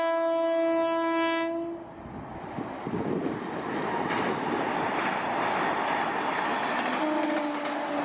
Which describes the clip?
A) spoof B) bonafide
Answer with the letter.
B